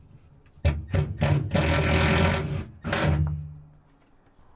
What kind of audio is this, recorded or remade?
recorded